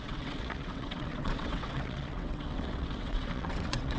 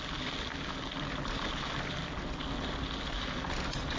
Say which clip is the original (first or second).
second